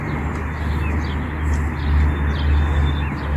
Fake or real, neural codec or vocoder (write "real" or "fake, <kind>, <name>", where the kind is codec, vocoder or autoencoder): real